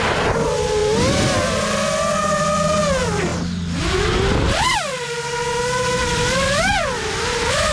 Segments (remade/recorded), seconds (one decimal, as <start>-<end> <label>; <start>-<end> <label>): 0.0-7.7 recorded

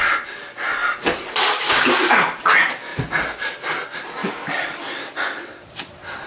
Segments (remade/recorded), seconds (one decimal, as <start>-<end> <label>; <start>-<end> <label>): 0.0-0.8 recorded; 0.8-1.7 remade; 1.7-2.9 recorded; 2.9-3.5 remade; 3.5-4.2 recorded; 4.2-4.8 remade; 4.8-6.3 recorded

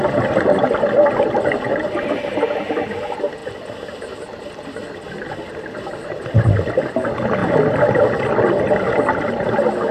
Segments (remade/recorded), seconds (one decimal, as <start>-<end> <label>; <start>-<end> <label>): 0.0-1.7 recorded; 1.7-2.6 remade; 2.6-9.9 recorded

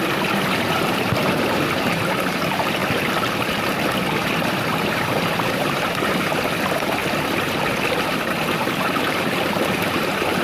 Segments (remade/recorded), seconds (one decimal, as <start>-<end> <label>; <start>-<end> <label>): 0.0-2.8 remade; 2.8-4.5 recorded; 4.5-7.0 remade; 7.0-8.6 recorded; 8.6-10.4 remade